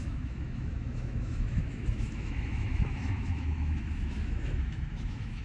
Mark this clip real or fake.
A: fake